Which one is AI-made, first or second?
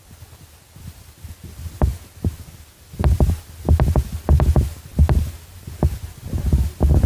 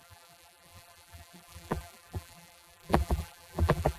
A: second